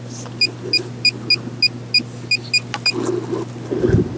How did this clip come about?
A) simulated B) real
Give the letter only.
B